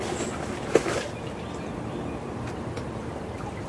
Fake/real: real